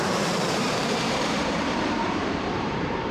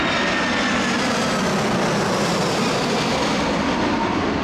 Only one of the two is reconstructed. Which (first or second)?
first